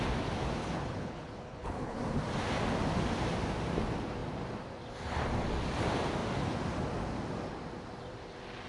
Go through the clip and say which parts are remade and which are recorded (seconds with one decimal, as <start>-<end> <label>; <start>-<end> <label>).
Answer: 0.0-0.6 recorded; 0.6-2.0 remade; 2.0-8.7 recorded